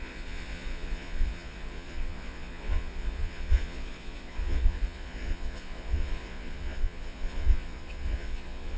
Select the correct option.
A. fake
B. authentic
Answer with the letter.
A